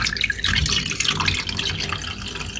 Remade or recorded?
recorded